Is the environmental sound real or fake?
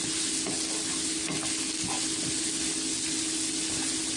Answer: real